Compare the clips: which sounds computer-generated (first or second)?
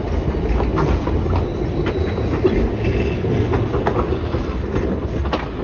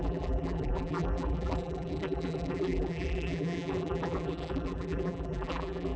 second